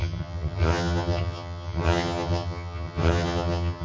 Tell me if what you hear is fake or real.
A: fake